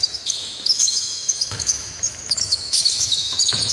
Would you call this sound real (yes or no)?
no